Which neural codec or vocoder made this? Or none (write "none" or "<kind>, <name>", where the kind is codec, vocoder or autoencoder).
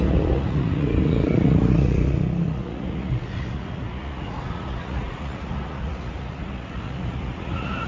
vocoder, Vocos